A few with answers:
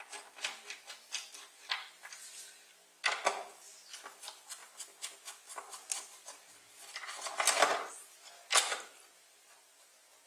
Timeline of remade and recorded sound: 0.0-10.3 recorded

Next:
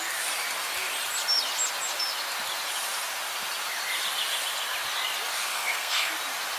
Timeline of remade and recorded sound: 0.0-5.5 recorded; 5.5-6.1 remade; 6.1-6.6 recorded

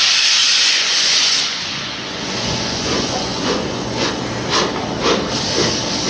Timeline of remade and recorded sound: 0.0-0.4 recorded; 0.4-4.1 remade; 4.1-6.1 recorded

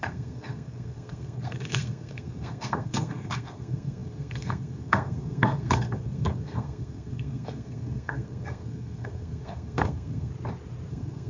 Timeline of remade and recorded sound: 0.0-10.3 remade; 10.3-10.9 recorded; 10.9-11.3 remade

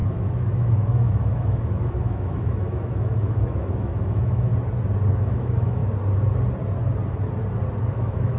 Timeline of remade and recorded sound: 0.0-4.5 remade; 4.5-5.1 recorded; 5.1-5.8 remade; 5.8-7.9 recorded; 7.9-8.4 remade

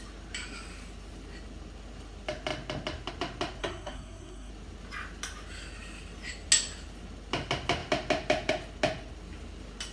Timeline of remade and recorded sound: 0.0-3.6 recorded; 3.6-4.5 remade; 4.5-9.9 recorded